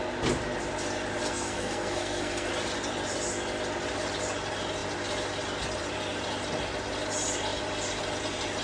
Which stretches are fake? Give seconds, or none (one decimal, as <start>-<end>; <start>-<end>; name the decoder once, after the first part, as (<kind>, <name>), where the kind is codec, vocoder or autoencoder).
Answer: 1.2-2.5 (codec, SNAC)